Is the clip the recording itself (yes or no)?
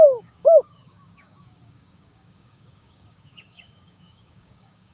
no